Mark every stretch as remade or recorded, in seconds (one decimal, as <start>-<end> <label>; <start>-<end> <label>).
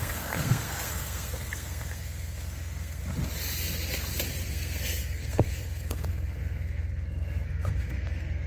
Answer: 0.0-3.0 remade; 3.0-4.5 recorded; 4.5-8.5 remade